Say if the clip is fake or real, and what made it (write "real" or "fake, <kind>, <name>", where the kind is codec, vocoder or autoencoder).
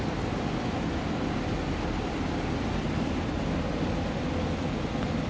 real